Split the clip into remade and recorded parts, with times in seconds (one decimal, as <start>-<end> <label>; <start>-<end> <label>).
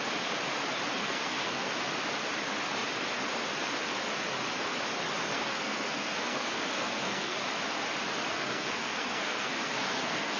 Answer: 0.0-1.0 recorded; 1.0-1.7 remade; 1.7-5.3 recorded; 5.3-7.4 remade; 7.4-8.3 recorded; 8.3-10.4 remade